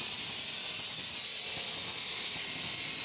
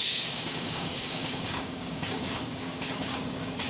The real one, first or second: first